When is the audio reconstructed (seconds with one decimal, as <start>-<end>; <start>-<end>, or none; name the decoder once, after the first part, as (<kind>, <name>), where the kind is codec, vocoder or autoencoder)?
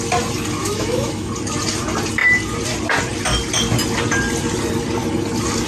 0.6-1.3 (autoencoder, DAC-VAE)